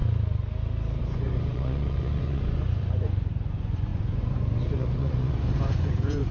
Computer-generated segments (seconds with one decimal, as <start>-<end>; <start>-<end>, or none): 1.0-6.3